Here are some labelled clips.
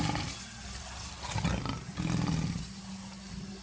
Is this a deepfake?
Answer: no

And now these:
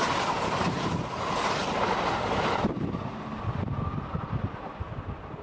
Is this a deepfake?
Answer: no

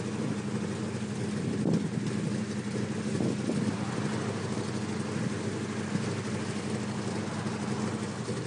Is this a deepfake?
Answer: no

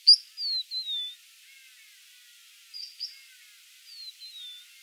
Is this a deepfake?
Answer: no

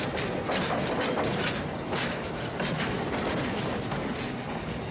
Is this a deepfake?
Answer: no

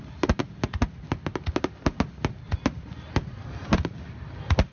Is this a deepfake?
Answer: no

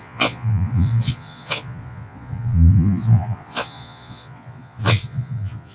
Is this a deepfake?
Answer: yes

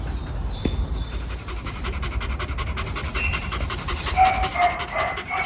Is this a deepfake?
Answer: no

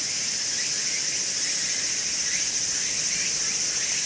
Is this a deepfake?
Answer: no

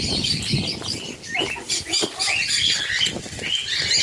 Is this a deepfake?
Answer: no